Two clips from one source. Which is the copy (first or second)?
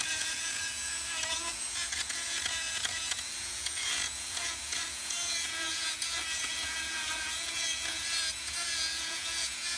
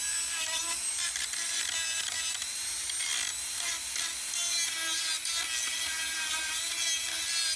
first